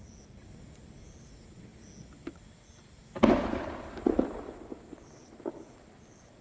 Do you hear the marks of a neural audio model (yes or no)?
no